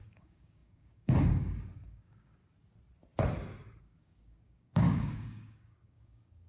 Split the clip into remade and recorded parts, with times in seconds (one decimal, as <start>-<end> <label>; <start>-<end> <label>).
0.0-2.4 remade; 2.4-3.8 recorded; 3.8-6.5 remade